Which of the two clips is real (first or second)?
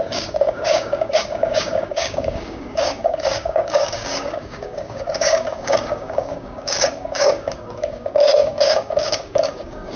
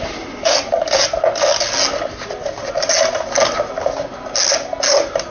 second